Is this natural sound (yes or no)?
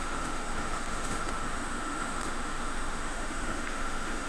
no